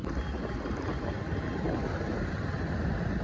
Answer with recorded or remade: recorded